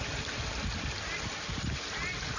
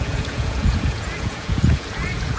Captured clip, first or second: first